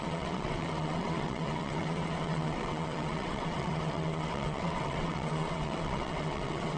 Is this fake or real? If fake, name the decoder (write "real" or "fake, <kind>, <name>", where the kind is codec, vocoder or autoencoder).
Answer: fake, vocoder, WaveNeXt